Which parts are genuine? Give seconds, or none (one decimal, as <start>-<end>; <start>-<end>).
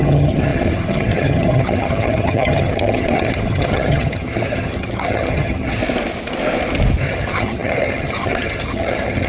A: 5.8-7.0